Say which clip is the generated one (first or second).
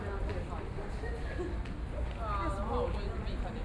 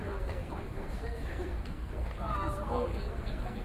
second